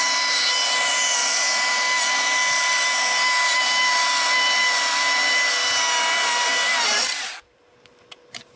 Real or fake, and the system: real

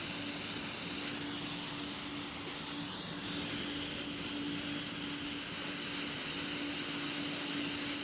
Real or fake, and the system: real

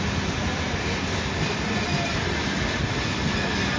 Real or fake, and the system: real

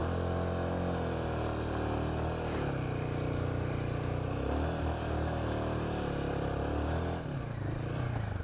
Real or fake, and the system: real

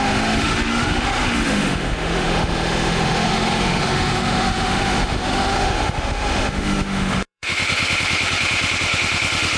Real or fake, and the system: fake, autoencoder, DAC-VAE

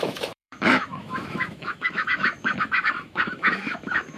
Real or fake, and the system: fake, autoencoder, DAC-VAE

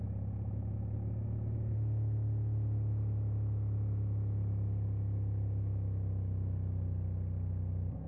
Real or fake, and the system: real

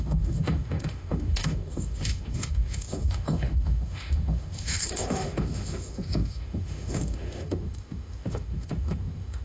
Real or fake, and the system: fake, autoencoder, DAC-VAE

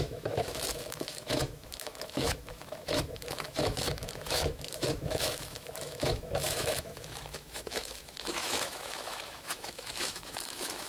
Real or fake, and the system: fake, autoencoder, DAC-VAE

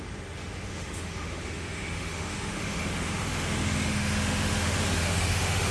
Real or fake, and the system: fake, autoencoder, DAC-VAE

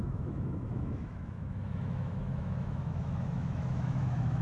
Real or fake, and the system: fake, autoencoder, DAC-VAE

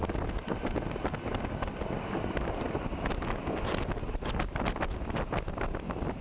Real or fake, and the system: real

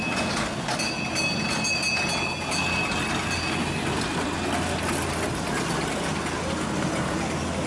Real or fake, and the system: real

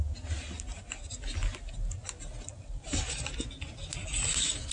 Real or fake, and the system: real